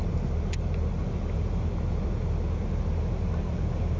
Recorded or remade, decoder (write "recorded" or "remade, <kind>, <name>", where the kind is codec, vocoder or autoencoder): recorded